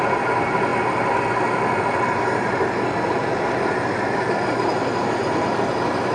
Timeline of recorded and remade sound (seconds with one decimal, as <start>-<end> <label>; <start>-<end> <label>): 0.0-6.1 recorded